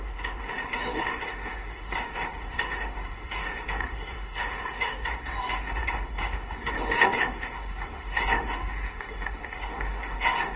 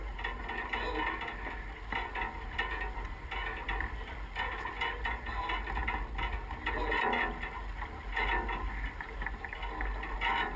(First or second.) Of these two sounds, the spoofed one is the first